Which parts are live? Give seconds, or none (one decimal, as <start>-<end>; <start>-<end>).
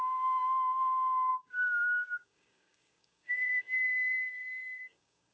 none